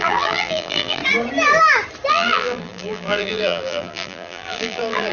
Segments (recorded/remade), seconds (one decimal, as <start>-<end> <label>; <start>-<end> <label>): 0.0-1.0 remade; 1.0-2.1 recorded; 2.1-5.1 remade